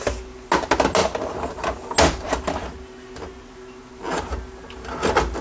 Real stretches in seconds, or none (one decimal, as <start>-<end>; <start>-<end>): 0.0-5.4